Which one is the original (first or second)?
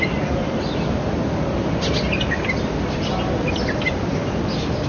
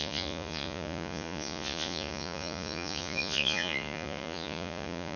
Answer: first